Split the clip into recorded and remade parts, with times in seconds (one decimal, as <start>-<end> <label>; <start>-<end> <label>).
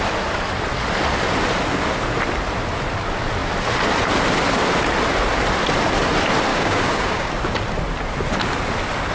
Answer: 0.0-6.5 recorded; 6.5-7.3 remade; 7.3-9.1 recorded